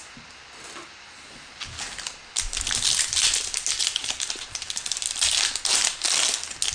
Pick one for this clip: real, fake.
real